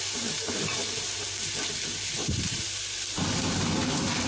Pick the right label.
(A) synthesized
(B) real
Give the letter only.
B